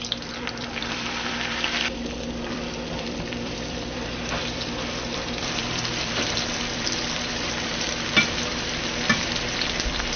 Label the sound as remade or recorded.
remade